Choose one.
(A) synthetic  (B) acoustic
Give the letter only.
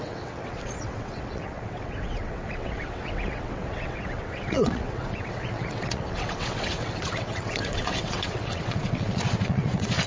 A